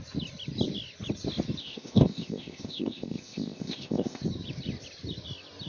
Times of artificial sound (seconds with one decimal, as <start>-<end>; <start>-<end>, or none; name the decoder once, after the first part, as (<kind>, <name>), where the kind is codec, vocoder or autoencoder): 1.6-4.2 (codec, ZipCodec)